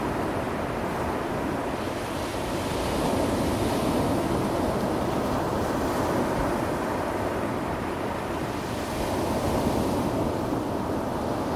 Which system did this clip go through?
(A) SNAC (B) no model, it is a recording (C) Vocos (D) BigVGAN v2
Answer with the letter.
B